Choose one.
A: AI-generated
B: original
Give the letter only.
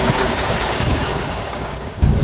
A